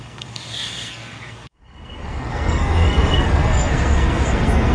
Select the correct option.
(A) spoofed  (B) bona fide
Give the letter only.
A